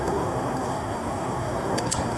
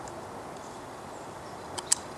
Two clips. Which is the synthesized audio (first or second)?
first